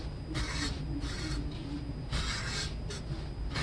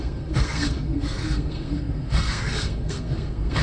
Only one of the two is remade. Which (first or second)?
second